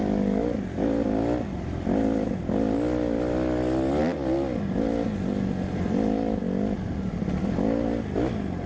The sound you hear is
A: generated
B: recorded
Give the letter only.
B